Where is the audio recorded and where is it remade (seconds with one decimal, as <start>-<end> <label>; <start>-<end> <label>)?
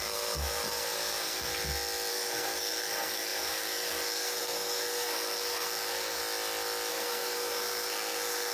0.0-1.5 remade; 1.5-2.1 recorded; 2.1-6.2 remade; 6.2-6.9 recorded; 6.9-8.5 remade